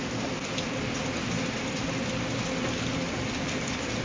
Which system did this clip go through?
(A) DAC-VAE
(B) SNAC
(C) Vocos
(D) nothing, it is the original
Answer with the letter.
D